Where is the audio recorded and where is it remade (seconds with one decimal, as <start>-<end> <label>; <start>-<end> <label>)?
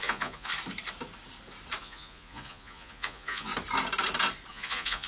0.0-0.5 remade; 0.5-1.8 recorded; 1.8-3.5 remade; 3.5-4.5 recorded; 4.5-5.1 remade